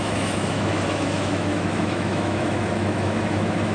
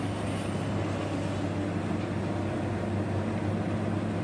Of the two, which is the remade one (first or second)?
first